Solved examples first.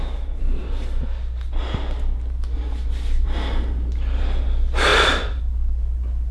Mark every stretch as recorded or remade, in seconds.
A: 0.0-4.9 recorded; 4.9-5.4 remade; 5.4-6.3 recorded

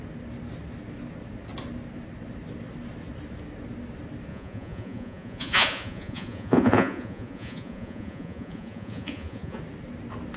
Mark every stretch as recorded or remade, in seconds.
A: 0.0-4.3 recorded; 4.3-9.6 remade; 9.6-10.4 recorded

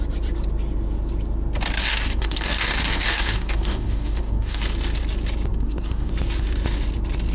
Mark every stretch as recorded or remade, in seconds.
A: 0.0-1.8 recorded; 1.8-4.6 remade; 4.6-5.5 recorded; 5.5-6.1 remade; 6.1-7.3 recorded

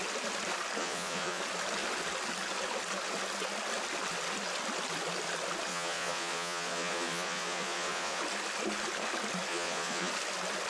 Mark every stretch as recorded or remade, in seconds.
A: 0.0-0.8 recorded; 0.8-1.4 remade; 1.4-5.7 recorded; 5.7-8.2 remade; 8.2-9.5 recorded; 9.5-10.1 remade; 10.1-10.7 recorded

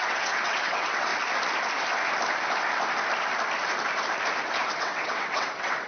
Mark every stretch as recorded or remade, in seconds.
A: 0.0-1.1 remade; 1.1-4.6 recorded; 4.6-5.9 remade